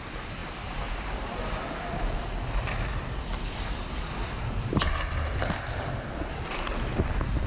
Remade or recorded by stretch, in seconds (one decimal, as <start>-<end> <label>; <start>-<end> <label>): 0.0-7.5 recorded